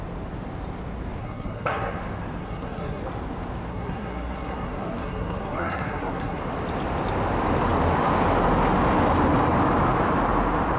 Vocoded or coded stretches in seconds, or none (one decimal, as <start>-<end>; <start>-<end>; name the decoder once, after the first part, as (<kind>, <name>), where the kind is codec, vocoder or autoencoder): 1.2-2.0 (codec, SNAC); 2.4-3.0; 3.7-6.4